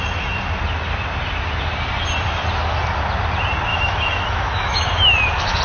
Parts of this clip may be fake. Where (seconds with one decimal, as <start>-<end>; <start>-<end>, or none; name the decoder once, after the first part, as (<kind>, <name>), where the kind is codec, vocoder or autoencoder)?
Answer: 3.7-5.6 (autoencoder, DAC-VAE)